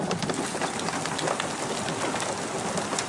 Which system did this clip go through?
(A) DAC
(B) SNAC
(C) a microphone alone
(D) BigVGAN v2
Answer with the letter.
C